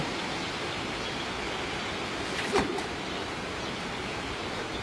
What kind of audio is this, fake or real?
fake